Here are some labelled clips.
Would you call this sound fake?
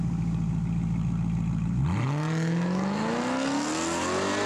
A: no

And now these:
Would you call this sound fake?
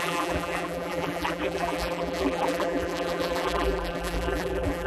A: yes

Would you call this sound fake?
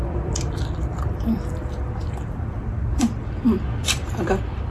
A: yes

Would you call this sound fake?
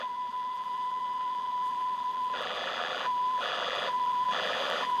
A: yes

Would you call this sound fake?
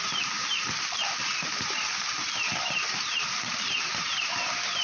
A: yes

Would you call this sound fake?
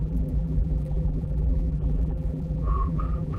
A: yes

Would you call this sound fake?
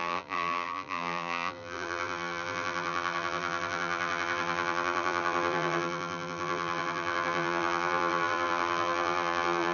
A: yes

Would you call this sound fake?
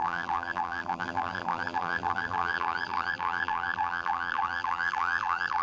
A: yes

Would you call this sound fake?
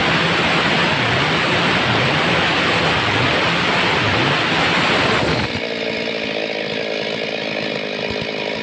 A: no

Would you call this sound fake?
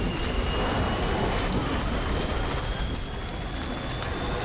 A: yes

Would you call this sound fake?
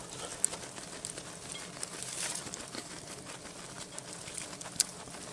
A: no